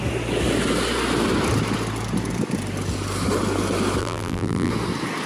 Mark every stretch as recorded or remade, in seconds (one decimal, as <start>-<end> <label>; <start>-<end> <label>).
0.0-4.0 recorded; 4.0-4.7 remade; 4.7-5.3 recorded